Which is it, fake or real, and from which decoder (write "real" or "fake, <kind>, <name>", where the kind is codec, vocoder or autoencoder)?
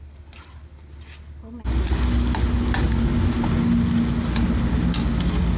real